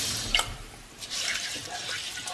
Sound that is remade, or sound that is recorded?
remade